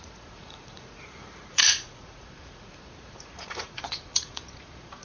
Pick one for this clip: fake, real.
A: fake